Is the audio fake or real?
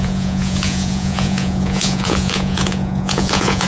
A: fake